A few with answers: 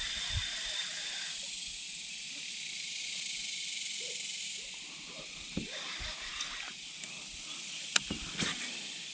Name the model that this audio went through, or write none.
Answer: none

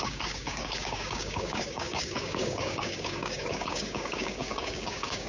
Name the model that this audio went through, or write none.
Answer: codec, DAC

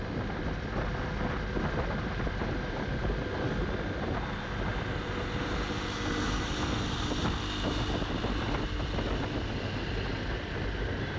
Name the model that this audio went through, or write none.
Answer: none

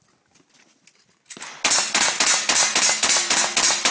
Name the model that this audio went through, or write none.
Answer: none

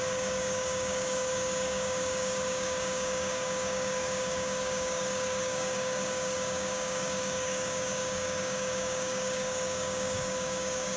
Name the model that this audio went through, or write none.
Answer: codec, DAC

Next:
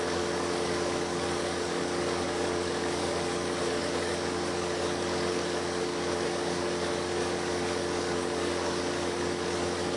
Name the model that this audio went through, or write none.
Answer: codec, DAC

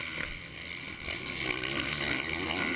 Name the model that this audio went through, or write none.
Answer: none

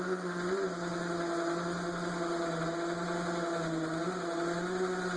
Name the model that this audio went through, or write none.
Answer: none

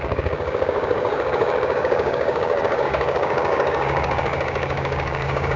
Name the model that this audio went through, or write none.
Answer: codec, DAC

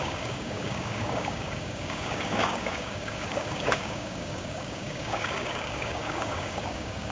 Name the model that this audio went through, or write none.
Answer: codec, DAC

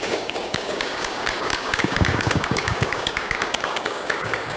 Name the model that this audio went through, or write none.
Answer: codec, DAC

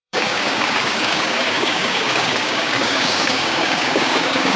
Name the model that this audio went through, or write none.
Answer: codec, DAC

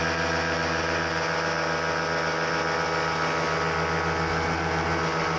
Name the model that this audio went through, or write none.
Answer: none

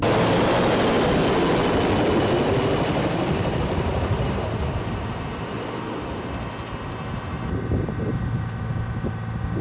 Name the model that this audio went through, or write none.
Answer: none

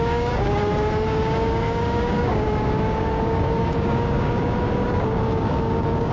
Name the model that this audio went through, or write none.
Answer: codec, DAC